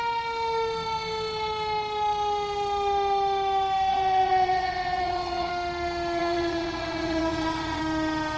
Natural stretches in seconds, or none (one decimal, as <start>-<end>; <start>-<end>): 0.0-3.9; 5.5-6.2; 7.8-8.4